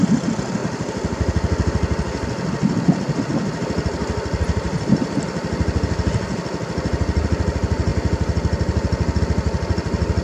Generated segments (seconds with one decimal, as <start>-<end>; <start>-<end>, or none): none